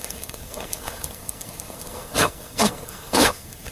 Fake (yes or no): yes